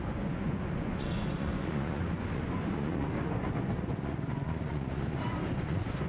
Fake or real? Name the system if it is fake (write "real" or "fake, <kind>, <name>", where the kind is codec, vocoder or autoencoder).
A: fake, vocoder, Vocos